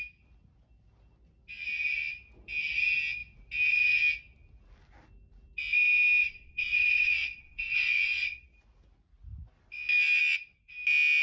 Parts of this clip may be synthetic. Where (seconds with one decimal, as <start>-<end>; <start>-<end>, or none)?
6.2-8.6